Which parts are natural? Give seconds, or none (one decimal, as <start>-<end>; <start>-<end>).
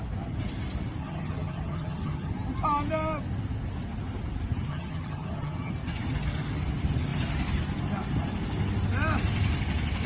0.0-1.0; 2.3-4.7; 5.7-10.1